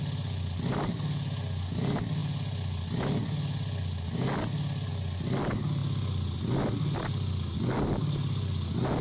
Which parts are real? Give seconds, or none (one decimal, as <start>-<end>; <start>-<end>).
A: 0.0-9.0